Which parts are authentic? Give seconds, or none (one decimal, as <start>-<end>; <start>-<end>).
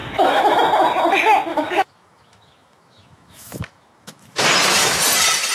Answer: 0.6-1.5; 4.4-5.5